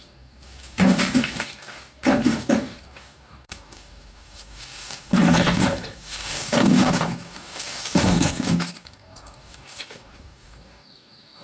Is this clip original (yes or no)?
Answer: no